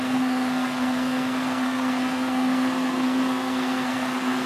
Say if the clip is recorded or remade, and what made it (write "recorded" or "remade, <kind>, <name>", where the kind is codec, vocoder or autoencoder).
remade, codec, SNAC